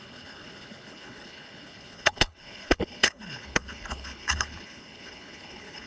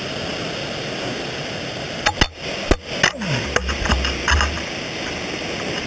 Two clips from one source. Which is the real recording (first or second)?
second